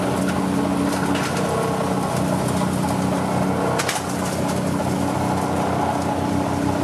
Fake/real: real